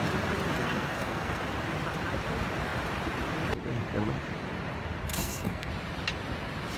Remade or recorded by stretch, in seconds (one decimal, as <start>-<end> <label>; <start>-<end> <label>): 0.0-0.6 recorded; 0.6-1.4 remade; 1.4-5.1 recorded; 5.1-5.7 remade; 5.7-6.8 recorded